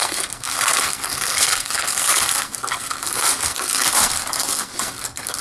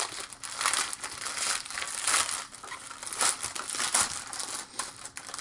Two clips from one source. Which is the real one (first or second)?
second